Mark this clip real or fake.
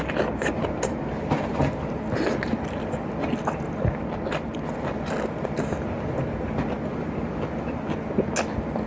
real